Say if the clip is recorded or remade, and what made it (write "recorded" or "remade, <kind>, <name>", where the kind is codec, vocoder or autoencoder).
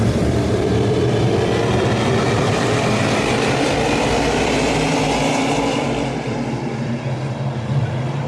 remade, vocoder, BigVGAN v2